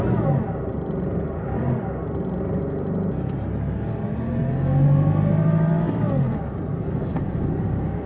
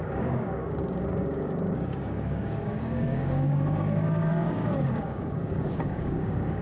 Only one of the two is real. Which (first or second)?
first